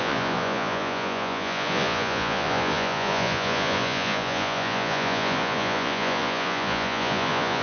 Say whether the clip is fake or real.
fake